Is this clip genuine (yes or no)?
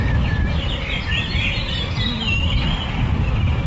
yes